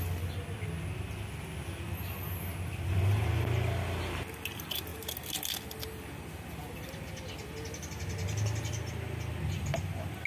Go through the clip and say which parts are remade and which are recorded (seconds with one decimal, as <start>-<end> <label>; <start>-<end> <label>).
0.0-10.3 recorded